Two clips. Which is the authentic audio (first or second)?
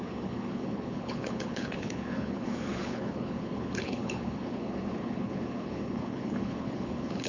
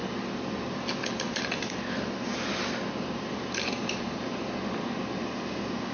second